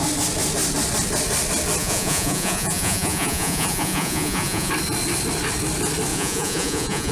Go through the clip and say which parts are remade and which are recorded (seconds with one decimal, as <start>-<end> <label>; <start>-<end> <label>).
0.0-1.8 recorded; 1.8-4.7 remade; 4.7-6.1 recorded; 6.1-7.1 remade